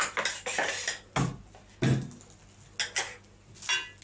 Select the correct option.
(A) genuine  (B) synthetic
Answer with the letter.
A